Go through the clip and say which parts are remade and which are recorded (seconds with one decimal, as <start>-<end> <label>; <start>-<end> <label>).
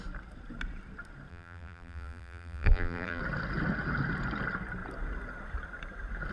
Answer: 0.0-1.3 recorded; 1.3-3.2 remade; 3.2-6.3 recorded